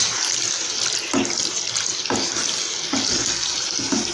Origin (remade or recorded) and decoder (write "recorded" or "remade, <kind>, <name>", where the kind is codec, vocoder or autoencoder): recorded